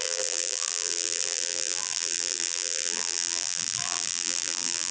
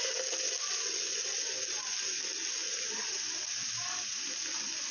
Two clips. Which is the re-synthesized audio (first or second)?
first